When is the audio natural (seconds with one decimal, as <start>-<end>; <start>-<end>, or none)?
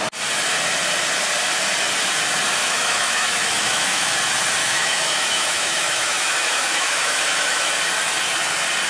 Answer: 0.0-2.6; 4.1-4.6; 7.7-8.9